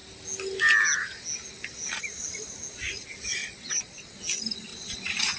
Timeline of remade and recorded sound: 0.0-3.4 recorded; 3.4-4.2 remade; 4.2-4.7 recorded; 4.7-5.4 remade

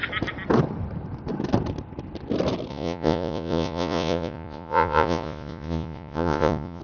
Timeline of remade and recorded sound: 0.0-2.7 recorded; 2.7-6.8 remade

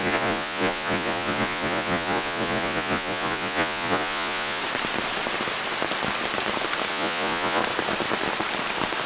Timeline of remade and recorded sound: 0.0-4.6 remade; 4.6-6.9 recorded; 6.9-7.6 remade; 7.6-9.1 recorded